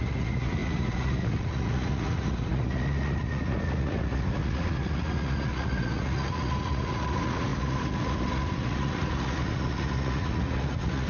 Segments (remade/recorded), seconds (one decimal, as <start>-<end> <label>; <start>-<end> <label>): 0.0-11.1 remade

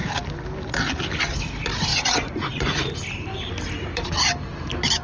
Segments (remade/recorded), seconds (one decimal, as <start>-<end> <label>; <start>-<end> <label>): 0.0-1.9 recorded; 1.9-2.8 remade; 2.8-5.0 recorded

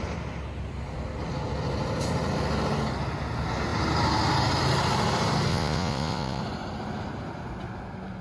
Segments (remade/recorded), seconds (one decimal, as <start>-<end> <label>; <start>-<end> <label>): 0.0-5.5 recorded; 5.5-6.4 remade; 6.4-8.2 recorded

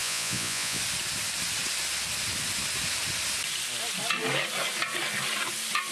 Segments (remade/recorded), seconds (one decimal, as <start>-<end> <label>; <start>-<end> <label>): 0.0-0.8 remade; 0.8-5.9 recorded

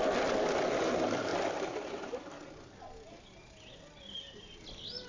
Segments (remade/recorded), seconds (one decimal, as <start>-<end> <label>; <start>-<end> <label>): 0.0-5.1 recorded

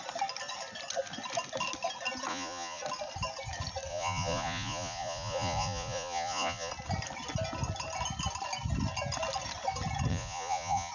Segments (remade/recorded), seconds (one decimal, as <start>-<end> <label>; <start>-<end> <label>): 0.0-2.3 recorded; 2.3-2.8 remade; 2.8-3.9 recorded; 3.9-6.7 remade; 6.7-10.1 recorded; 10.1-10.9 remade

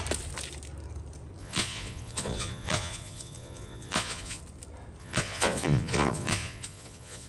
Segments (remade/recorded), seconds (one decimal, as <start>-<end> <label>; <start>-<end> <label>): 0.0-1.4 recorded; 1.4-4.4 remade; 4.4-5.0 recorded; 5.0-7.3 remade

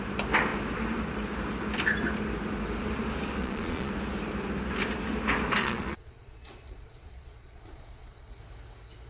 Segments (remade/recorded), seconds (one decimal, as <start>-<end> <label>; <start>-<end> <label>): 0.0-3.4 recorded; 3.4-3.9 remade; 3.9-5.6 recorded; 5.6-8.4 remade; 8.4-9.1 recorded